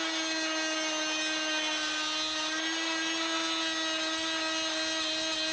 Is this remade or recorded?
recorded